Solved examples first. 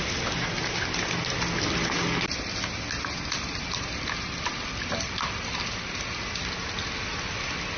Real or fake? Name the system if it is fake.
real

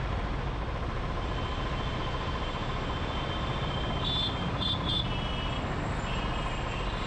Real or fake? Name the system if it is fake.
real